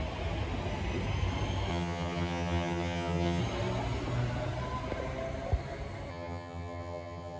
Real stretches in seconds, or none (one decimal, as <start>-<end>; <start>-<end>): 0.0-1.7; 3.4-6.1